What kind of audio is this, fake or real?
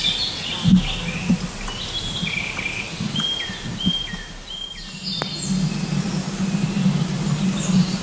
real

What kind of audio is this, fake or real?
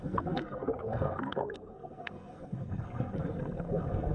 fake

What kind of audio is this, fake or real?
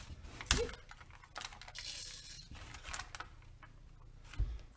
real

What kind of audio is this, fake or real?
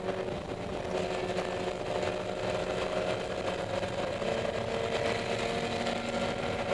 real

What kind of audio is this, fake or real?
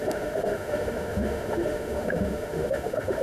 fake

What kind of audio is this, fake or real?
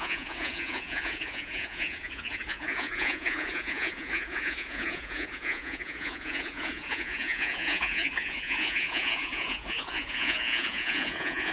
fake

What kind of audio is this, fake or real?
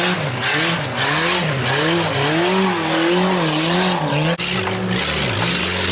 real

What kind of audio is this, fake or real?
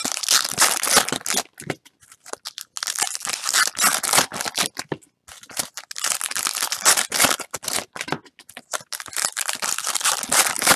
real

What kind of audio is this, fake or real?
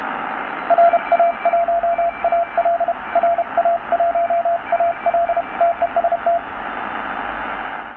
real